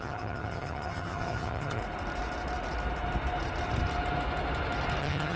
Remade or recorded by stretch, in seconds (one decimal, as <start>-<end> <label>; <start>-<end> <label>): 0.0-1.8 remade; 1.8-5.0 recorded; 5.0-5.4 remade